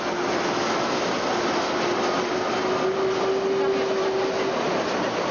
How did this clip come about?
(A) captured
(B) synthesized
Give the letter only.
A